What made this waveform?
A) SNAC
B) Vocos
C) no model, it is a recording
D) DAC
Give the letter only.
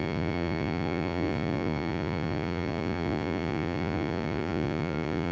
B